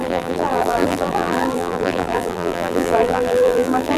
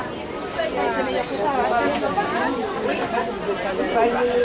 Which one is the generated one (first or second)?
first